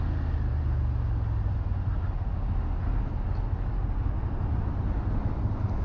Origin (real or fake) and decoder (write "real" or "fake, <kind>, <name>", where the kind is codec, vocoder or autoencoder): real